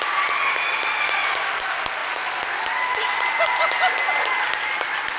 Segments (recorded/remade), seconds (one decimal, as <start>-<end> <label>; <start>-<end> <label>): 0.0-5.2 recorded